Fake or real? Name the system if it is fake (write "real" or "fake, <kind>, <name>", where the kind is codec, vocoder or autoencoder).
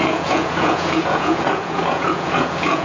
fake, vocoder, Vocos